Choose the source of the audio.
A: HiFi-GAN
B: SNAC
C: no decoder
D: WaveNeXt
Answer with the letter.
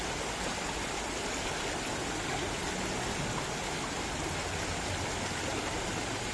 C